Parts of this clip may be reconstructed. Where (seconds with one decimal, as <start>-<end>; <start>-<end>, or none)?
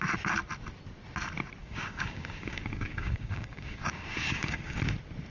1.6-4.8